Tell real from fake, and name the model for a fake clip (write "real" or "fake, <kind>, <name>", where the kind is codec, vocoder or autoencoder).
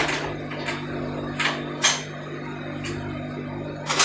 real